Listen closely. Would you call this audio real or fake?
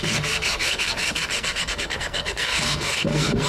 fake